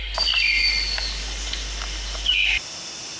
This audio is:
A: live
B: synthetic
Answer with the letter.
A